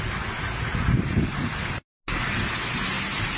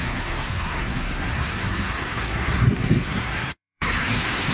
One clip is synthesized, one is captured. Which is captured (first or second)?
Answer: first